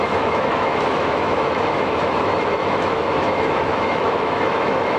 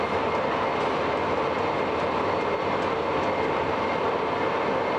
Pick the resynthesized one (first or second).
first